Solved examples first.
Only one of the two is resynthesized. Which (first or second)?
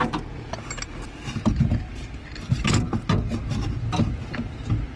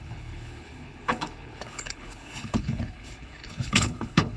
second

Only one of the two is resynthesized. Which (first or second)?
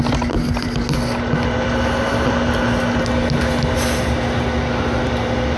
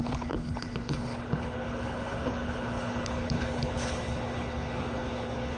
second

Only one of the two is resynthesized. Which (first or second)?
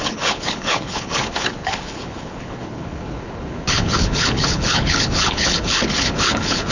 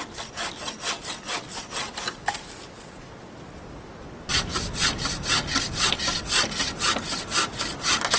first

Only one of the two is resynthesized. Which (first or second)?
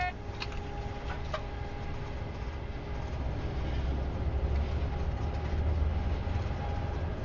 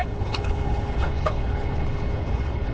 second